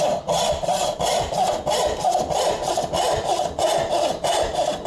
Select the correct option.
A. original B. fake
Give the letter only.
A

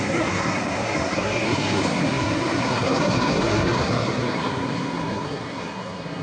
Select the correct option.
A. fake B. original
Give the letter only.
A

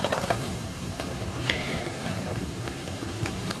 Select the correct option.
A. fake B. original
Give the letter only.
A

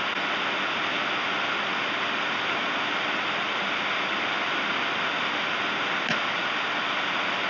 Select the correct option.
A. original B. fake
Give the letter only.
A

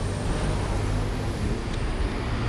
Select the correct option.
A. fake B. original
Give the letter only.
B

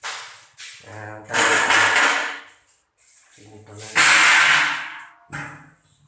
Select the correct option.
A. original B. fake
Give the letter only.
A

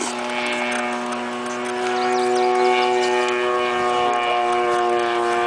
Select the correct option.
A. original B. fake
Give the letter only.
A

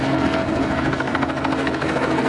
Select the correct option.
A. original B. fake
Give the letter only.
B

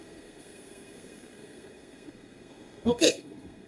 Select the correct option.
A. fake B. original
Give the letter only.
A